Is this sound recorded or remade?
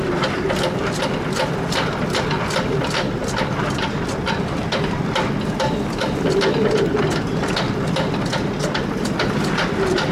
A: recorded